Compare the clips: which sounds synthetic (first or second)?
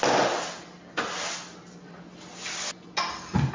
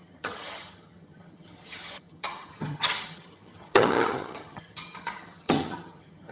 second